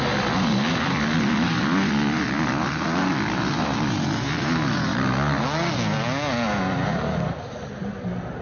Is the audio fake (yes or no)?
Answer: no